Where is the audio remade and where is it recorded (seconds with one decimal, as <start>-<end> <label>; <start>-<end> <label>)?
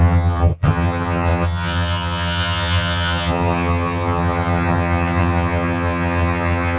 0.0-6.8 remade